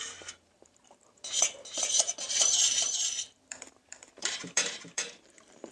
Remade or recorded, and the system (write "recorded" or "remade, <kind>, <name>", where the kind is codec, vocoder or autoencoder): remade, vocoder, BigVGAN v2